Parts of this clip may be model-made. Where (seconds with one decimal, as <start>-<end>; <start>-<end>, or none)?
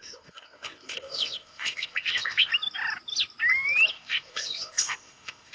0.0-2.5; 3.9-5.5